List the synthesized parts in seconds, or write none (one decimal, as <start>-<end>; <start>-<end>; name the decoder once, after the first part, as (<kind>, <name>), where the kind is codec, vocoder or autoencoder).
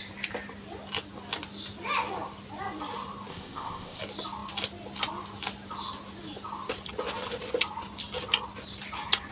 3.3-4.0 (codec, ZipCodec)